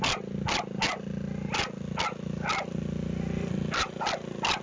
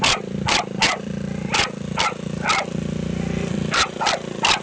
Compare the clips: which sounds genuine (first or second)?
first